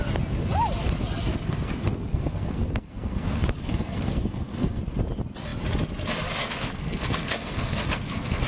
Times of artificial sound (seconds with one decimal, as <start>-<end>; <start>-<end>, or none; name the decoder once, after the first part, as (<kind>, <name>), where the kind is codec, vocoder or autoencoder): 1.3-4.8 (codec, SNAC); 6.4-8.5